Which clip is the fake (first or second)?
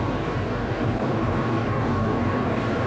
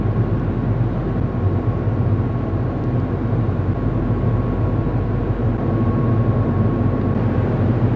first